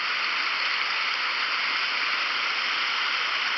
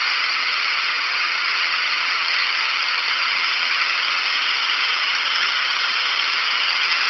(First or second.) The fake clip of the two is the second